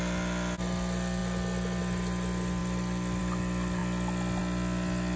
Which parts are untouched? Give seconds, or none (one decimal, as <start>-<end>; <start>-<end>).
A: 0.0-5.2